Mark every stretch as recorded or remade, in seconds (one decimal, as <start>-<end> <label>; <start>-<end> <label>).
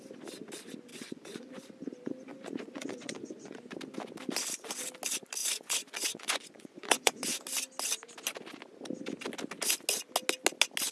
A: 0.0-0.9 recorded; 0.9-1.7 remade; 1.7-2.3 recorded; 2.3-3.6 remade; 3.6-5.4 recorded; 5.4-7.4 remade; 7.4-10.9 recorded